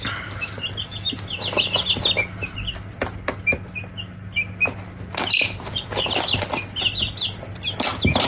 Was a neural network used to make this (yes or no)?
no